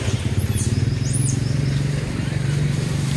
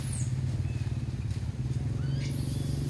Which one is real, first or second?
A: second